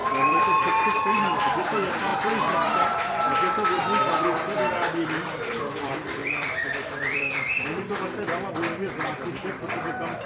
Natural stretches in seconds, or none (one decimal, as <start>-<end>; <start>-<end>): none